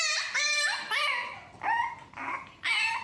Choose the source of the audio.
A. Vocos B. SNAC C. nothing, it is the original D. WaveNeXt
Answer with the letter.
C